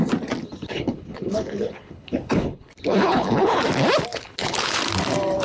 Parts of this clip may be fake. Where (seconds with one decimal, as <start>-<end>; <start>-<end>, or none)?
0.4-3.6; 4.1-4.8